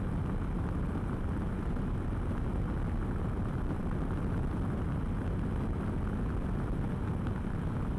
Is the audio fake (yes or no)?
no